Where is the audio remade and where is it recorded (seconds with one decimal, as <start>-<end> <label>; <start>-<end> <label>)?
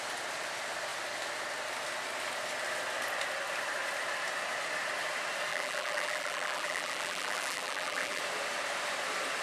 0.0-5.5 recorded; 5.5-8.2 remade; 8.2-9.4 recorded